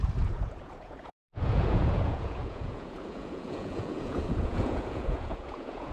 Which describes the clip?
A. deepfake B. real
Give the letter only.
A